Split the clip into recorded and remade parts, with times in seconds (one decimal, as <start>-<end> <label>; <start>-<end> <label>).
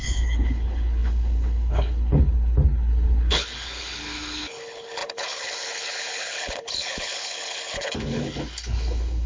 0.0-9.3 remade